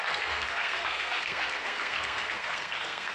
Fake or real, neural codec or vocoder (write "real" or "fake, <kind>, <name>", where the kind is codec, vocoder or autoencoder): fake, codec, SNAC